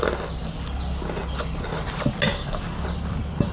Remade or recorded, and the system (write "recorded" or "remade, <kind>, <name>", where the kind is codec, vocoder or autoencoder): recorded